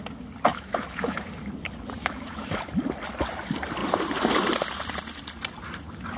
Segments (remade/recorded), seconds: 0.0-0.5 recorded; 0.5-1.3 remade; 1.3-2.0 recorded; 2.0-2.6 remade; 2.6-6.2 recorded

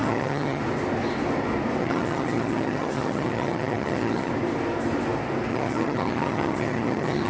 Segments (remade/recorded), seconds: 0.0-0.6 remade; 0.6-1.8 recorded; 1.8-4.3 remade; 4.3-5.5 recorded; 5.5-7.3 remade

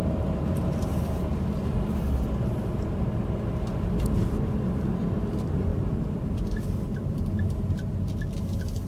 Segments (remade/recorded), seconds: 0.0-8.9 recorded

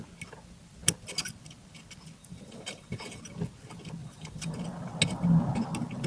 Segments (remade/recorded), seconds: 0.0-2.2 recorded; 2.2-3.2 remade; 3.2-4.0 recorded; 4.0-4.5 remade; 4.5-6.1 recorded

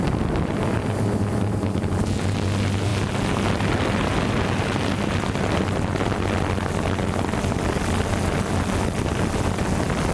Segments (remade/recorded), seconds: 0.0-10.1 recorded

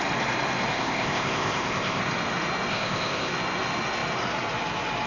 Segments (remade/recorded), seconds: 0.0-0.7 recorded; 0.7-2.0 remade; 2.0-2.7 recorded; 2.7-3.3 remade; 3.3-5.1 recorded

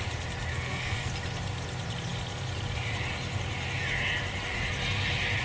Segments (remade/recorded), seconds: 0.0-0.5 recorded; 0.5-1.1 remade; 1.1-5.4 recorded